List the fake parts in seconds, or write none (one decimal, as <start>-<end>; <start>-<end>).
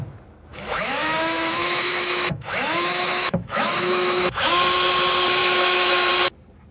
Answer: 0.5-4.5; 5.4-6.1